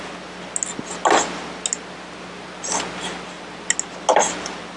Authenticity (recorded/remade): recorded